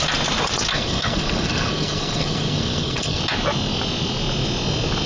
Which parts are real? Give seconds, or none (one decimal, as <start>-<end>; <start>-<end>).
0.0-0.7; 3.2-5.1